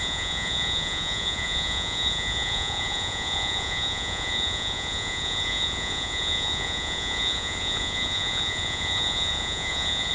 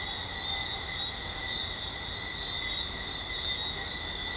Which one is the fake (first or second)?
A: first